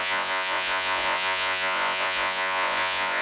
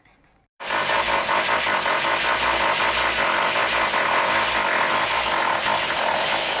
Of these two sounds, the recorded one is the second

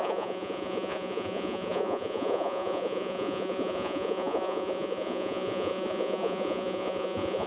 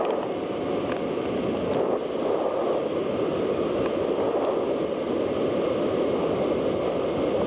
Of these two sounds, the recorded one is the second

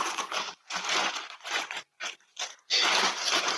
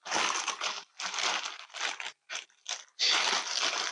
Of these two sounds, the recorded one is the second